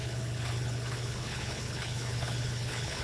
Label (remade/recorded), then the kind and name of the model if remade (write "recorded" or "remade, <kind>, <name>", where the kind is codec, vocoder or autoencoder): remade, codec, HILCodec